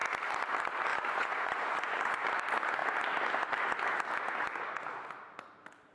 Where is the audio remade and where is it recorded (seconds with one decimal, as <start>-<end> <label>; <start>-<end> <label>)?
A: 0.0-0.9 recorded; 0.9-2.3 remade; 2.3-5.9 recorded